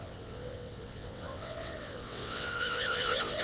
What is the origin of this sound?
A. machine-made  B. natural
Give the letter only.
A